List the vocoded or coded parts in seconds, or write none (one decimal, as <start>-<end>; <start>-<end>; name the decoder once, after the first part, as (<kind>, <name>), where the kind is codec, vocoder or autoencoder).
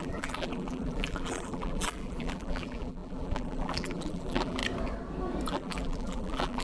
0.0-4.6 (vocoder, BigVGAN v2); 5.5-6.6